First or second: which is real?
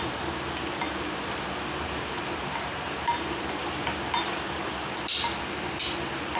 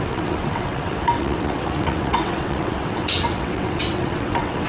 first